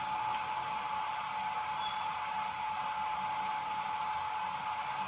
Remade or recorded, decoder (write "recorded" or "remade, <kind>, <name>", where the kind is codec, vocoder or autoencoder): recorded